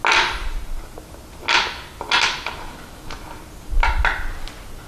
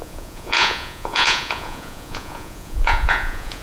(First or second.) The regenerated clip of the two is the second